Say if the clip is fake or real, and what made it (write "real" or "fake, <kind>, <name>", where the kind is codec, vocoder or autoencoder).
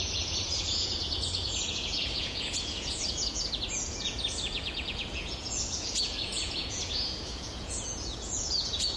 fake, vocoder, Vocos